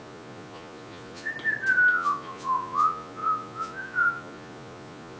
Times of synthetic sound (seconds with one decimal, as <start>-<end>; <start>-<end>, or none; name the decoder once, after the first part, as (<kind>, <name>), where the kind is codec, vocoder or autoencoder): 0.0-1.3 (vocoder, Vocos); 1.9-5.2